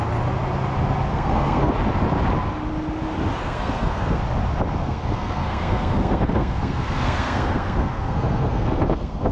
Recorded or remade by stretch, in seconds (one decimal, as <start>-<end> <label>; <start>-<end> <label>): 0.0-1.1 recorded; 1.1-1.7 remade; 1.7-3.4 recorded; 3.4-4.2 remade; 4.2-4.8 recorded; 4.8-9.3 remade